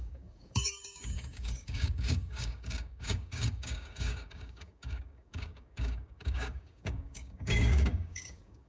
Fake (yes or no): yes